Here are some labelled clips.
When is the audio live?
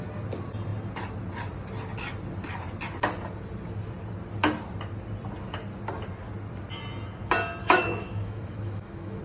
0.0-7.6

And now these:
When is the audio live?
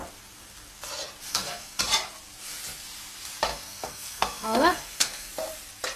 0.0-1.3; 1.8-3.5; 5.3-6.0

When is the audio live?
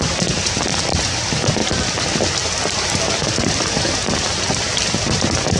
0.0-1.6; 5.0-5.6